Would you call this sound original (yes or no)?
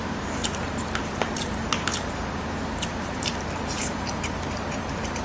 no